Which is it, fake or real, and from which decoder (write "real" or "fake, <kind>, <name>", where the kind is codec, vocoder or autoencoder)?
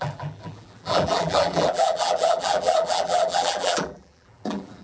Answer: fake, vocoder, BigVGAN v2